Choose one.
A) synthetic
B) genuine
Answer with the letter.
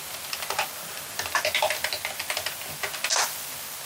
B